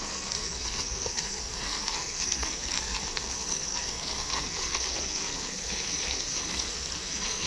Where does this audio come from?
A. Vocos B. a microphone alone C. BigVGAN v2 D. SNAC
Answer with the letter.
D